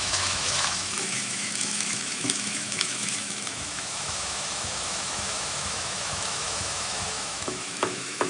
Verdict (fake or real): fake